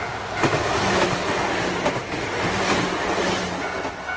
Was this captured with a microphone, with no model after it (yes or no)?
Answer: yes